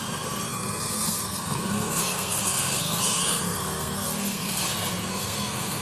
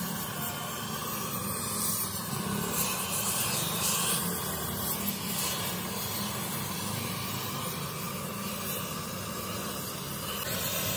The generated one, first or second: first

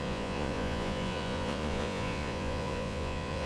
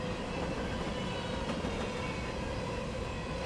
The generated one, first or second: first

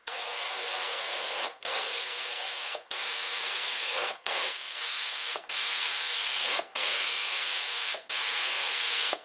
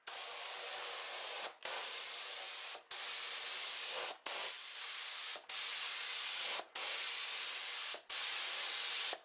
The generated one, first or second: first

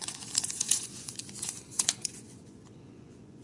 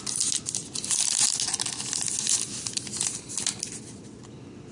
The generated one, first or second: first